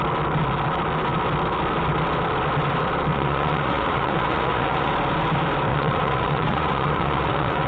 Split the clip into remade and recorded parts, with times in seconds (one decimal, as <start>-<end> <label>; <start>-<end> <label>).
0.0-3.1 recorded; 3.1-4.9 remade; 4.9-5.7 recorded; 5.7-7.7 remade